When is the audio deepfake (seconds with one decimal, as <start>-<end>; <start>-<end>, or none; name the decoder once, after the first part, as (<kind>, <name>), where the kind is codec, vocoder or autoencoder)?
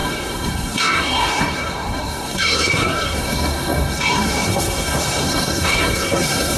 0.0-6.6 (codec, SNAC)